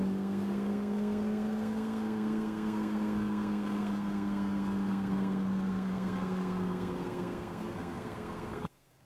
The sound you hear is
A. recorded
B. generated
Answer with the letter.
B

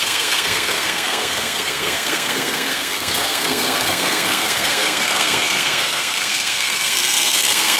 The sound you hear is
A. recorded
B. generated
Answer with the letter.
B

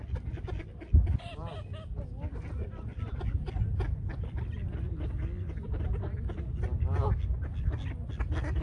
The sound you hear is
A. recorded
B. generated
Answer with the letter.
A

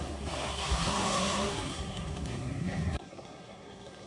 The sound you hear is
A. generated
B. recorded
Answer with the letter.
A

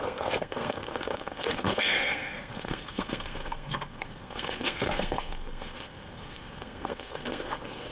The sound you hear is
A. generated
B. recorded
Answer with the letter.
A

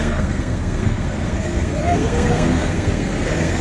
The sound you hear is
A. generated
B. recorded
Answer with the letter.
A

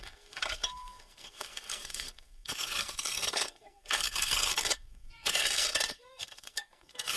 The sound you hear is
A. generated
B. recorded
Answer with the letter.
A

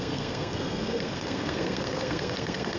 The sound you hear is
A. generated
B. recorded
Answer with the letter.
A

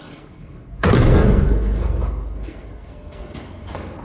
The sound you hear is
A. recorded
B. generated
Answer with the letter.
B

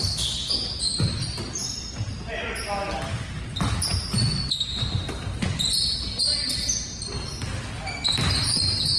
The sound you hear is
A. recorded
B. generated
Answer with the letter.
A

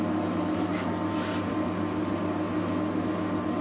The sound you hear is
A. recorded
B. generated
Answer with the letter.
A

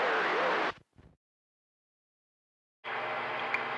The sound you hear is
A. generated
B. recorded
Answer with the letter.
B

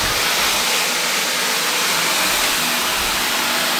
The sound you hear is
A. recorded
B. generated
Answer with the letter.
A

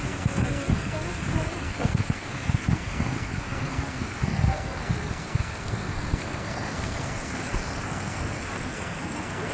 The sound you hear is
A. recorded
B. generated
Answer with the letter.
B